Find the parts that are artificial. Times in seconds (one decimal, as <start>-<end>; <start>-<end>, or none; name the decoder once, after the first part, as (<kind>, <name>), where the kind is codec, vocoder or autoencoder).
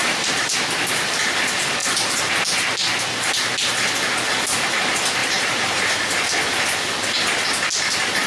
0.0-0.5 (vocoder, BigVGAN v2); 1.8-2.3; 5.2-5.8